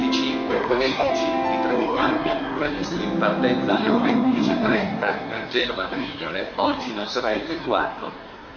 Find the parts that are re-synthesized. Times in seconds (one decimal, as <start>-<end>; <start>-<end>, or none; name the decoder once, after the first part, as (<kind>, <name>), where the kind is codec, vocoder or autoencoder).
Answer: 0.5-1.1 (codec, SNAC); 1.7-3.0; 3.7-8.6